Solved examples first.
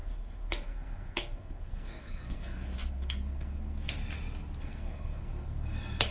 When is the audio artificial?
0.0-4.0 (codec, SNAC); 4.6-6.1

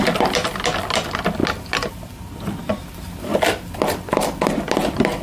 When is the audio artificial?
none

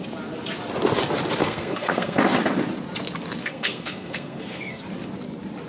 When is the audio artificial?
1.4-2.2 (codec, SNAC); 3.4-4.8